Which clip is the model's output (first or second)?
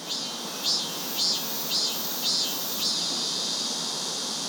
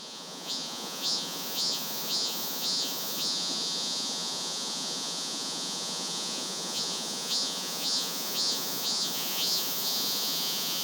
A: second